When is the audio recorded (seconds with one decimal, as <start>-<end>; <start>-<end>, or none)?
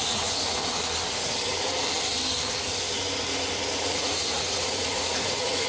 0.6-4.0